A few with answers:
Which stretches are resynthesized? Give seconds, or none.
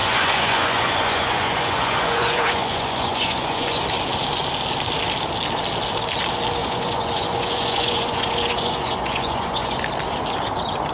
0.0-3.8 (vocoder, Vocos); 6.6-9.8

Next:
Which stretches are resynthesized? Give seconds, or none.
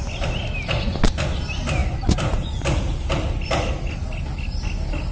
none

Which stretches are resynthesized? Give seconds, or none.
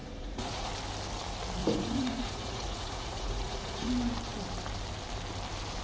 0.0-0.7 (vocoder, Vocos); 1.6-3.9